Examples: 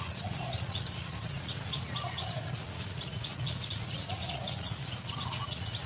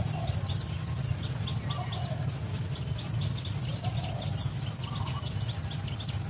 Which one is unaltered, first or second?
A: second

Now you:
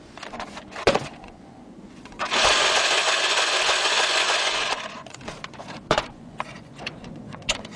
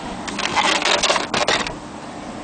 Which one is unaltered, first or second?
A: second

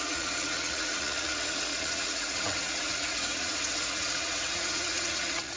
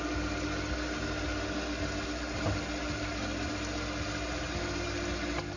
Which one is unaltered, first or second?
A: second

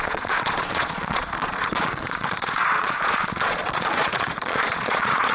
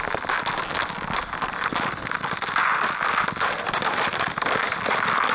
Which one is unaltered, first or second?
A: second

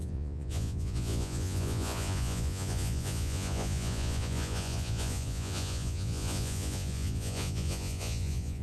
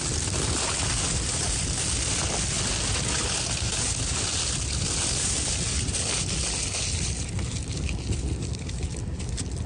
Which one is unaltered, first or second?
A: second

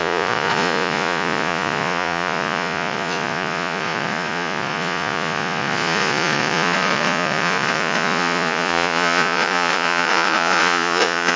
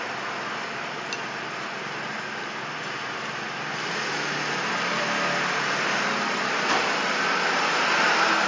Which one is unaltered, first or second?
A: second